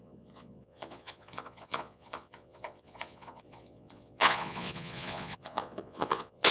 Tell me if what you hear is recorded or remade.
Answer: remade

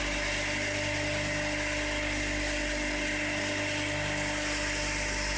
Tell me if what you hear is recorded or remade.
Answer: recorded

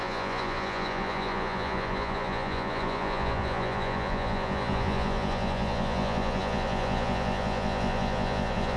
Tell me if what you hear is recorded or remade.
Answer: remade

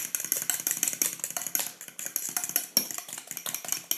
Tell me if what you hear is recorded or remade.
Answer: recorded